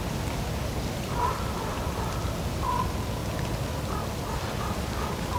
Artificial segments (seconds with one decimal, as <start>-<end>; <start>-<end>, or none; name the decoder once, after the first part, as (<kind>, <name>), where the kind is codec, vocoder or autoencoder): none